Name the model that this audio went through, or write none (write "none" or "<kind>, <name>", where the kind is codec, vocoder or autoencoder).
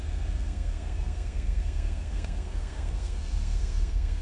codec, SNAC